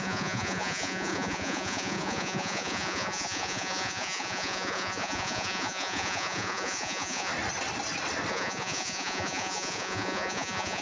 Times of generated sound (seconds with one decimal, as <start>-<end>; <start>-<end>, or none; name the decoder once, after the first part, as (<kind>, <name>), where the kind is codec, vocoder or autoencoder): 0.0-7.3 (vocoder, Vocos); 8.3-10.8

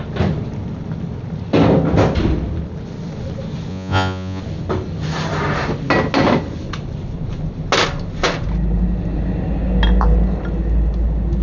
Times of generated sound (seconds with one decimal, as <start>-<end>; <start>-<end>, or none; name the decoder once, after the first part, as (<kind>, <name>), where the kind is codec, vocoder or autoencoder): 3.7-4.4 (vocoder, Vocos)